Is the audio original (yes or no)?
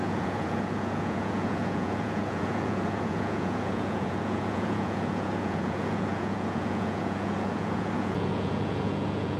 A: no